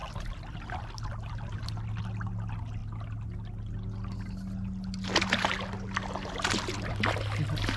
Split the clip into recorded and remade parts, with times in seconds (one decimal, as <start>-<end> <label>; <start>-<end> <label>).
0.0-7.8 recorded